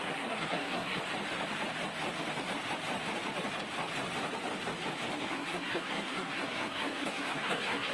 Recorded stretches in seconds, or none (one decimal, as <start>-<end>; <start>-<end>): 1.0-5.2